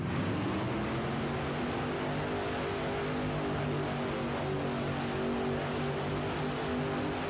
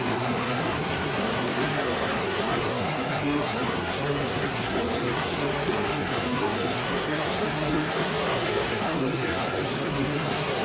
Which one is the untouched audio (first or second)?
first